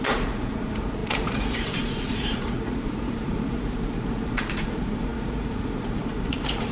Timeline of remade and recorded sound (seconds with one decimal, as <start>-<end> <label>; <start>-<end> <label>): 0.0-6.7 remade